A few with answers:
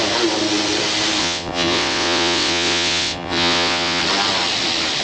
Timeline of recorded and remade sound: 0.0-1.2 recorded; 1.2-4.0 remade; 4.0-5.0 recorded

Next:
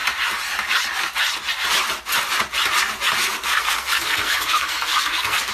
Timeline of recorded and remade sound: 0.0-3.2 recorded; 3.2-5.5 remade